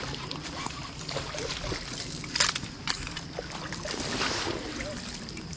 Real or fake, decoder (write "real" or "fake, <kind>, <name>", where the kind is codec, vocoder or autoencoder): real